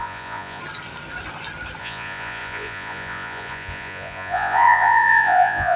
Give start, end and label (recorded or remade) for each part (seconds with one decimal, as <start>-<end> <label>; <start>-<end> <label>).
0.0-0.6 remade; 0.6-1.8 recorded; 1.8-5.8 remade